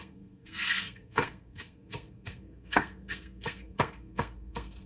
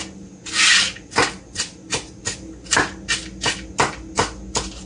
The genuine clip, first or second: second